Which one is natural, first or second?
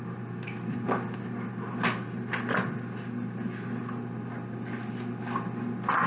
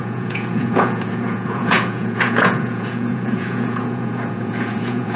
first